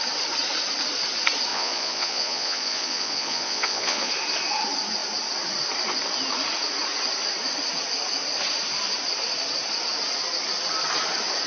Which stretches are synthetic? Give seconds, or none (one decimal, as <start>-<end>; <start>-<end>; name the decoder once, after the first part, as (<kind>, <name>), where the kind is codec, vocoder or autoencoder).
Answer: 1.5-4.1 (vocoder, Vocos)